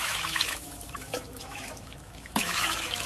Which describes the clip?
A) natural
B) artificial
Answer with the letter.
B